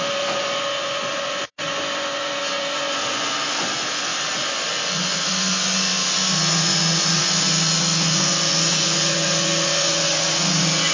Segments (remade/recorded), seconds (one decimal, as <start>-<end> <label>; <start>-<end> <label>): 0.0-10.9 remade